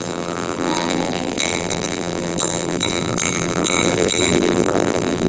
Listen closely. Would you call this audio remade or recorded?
remade